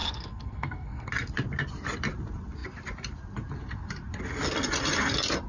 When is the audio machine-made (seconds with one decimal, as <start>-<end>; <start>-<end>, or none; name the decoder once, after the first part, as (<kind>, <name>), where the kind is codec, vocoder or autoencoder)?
0.0-1.1 (codec, SNAC)